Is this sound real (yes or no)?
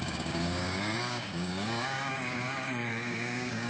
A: no